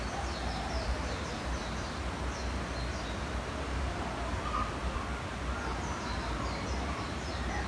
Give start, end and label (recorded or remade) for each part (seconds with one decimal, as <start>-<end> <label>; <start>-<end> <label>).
0.0-0.4 recorded; 0.4-2.0 remade; 2.0-2.9 recorded; 2.9-4.9 remade; 4.9-5.7 recorded; 5.7-7.7 remade